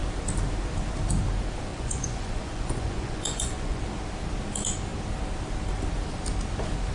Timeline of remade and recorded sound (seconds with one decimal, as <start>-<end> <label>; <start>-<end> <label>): 0.0-1.7 recorded; 1.7-3.8 remade; 3.8-6.9 recorded